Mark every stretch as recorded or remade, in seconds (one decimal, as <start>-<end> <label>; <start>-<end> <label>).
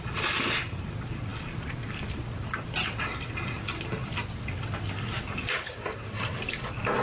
0.0-7.0 recorded